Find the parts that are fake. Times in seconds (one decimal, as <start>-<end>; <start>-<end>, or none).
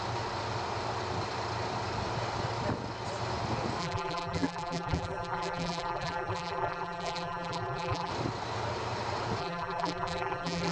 3.8-8.1; 9.4-10.7